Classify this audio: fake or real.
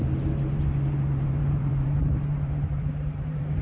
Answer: fake